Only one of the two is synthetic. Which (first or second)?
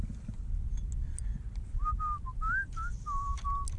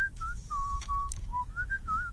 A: second